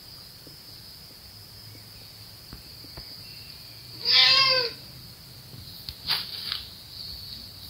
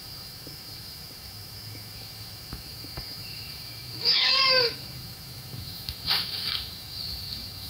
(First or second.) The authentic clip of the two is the first